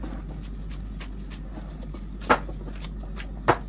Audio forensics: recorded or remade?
recorded